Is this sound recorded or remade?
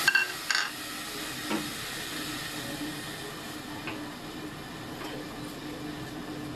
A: recorded